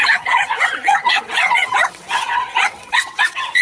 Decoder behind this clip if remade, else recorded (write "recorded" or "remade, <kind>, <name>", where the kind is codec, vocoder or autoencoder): remade, vocoder, WaveNeXt